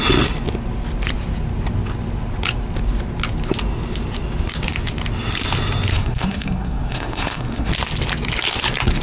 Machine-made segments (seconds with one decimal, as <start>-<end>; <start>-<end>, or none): 5.9-7.7